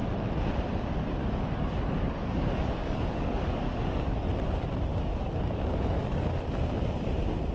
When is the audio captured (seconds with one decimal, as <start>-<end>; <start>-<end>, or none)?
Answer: 0.0-1.2; 4.3-4.9; 6.3-7.5